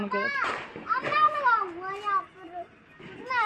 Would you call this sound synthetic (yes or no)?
no